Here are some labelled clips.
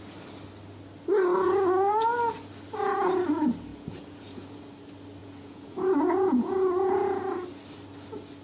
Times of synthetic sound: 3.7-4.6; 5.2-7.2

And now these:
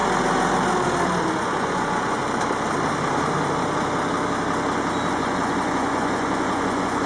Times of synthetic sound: 1.4-2.2; 5.1-7.1

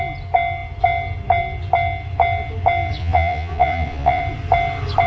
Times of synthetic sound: 3.0-4.2

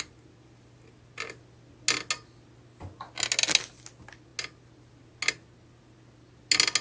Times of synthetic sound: none

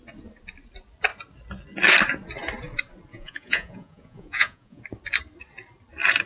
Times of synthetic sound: 3.1-4.8

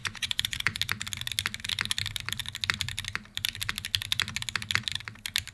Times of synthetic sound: 0.0-0.8